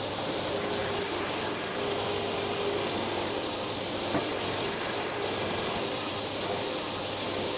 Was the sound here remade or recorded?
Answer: recorded